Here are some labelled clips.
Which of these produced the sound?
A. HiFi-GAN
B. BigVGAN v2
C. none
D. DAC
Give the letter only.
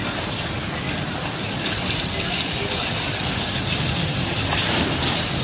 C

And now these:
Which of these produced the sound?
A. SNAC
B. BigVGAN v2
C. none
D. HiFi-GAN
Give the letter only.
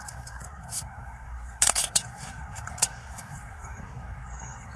A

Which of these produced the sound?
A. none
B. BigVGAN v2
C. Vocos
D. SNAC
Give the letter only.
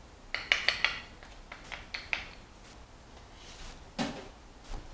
A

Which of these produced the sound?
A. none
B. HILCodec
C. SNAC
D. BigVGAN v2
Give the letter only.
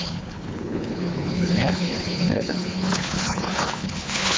B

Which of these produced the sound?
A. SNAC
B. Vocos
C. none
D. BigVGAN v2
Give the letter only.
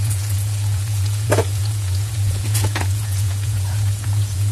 B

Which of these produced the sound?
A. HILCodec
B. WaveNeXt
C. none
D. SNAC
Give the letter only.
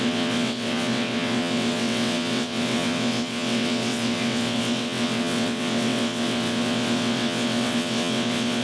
B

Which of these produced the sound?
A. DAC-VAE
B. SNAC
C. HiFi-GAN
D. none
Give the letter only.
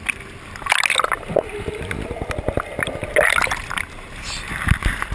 D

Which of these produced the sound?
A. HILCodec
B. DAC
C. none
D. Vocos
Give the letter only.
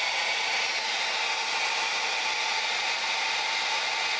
C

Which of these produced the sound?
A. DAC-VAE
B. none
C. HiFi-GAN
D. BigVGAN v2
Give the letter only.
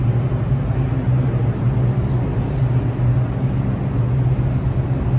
B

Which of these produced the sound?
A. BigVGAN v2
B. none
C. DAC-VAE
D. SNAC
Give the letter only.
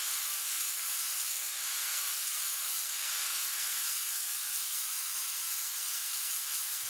D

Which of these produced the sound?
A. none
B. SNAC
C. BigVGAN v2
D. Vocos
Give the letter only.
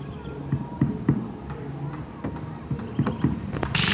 A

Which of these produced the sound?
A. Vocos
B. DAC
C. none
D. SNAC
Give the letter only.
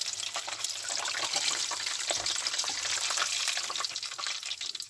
C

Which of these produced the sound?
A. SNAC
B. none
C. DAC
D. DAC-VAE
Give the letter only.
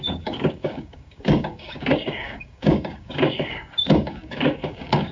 C